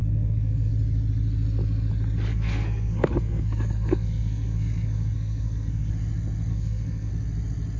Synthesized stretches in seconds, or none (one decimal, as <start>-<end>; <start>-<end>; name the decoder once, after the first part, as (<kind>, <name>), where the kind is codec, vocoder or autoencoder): 0.0-0.7 (codec, SNAC); 2.3-5.9; 6.5-7.1